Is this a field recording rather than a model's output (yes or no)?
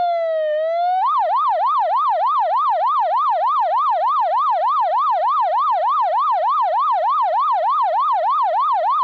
no